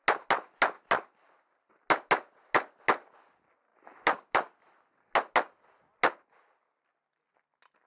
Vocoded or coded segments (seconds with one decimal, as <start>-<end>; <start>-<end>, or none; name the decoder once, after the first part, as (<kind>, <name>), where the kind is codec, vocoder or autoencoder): none